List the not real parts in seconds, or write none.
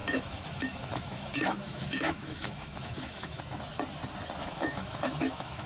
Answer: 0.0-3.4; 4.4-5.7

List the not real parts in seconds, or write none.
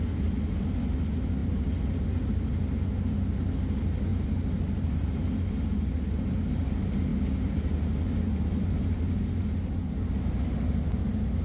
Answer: none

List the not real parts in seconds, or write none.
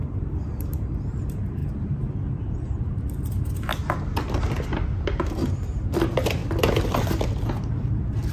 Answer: 0.0-3.7; 5.0-6.4; 7.7-8.3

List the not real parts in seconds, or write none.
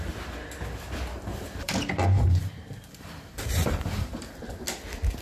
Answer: 1.3-4.4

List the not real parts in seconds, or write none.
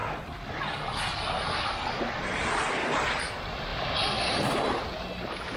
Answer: none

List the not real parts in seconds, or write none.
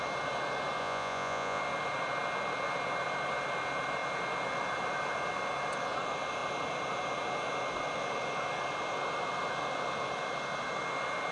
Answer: 0.8-1.6